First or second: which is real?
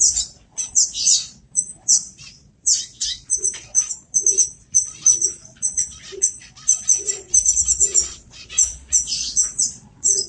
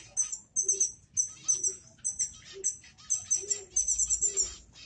second